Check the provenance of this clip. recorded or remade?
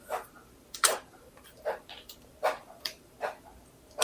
remade